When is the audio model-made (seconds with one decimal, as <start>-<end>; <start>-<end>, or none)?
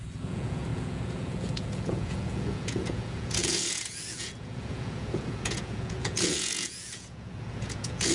0.0-8.1